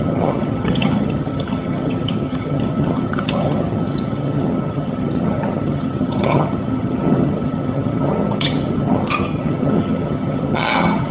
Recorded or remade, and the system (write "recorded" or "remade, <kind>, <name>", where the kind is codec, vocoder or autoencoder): remade, vocoder, HiFi-GAN